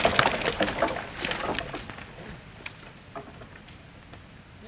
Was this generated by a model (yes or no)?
no